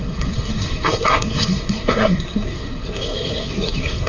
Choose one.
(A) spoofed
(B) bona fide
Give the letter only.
A